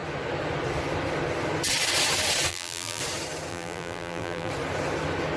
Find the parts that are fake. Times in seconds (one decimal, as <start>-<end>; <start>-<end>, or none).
2.5-3.0; 3.5-4.5